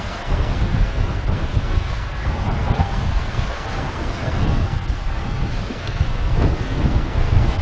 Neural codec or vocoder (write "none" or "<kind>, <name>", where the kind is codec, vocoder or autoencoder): codec, SNAC